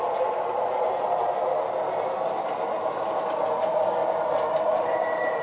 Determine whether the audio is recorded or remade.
recorded